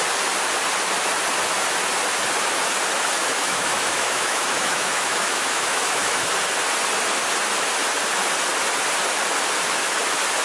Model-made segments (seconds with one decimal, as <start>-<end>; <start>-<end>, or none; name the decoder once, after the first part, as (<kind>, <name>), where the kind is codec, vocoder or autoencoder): 3.2-6.3 (autoencoder, DAC-VAE)